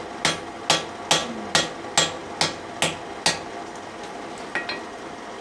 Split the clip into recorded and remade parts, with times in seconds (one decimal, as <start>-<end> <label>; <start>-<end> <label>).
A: 0.0-5.4 recorded